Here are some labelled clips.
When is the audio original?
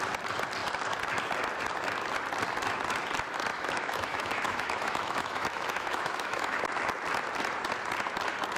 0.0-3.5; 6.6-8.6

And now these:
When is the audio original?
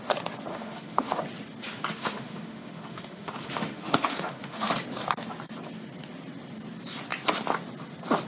0.0-0.5; 1.2-1.9; 4.7-8.3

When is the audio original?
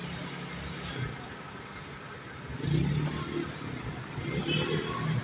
0.0-5.2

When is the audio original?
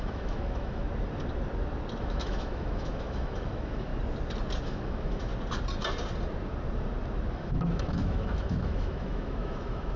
0.8-2.0; 3.9-4.6; 5.3-7.3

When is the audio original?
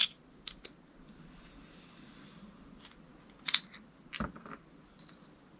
0.0-5.6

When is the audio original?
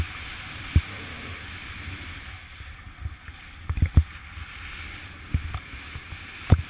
0.0-0.9; 1.4-6.7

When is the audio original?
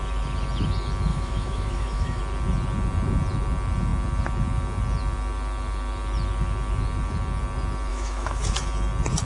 0.0-1.1; 2.2-7.9; 8.4-9.2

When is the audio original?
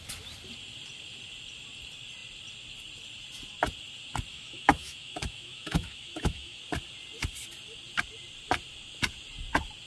0.0-4.3; 6.6-9.9